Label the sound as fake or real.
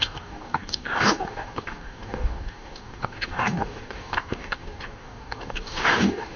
fake